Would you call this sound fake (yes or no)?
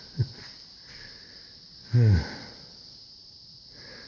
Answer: no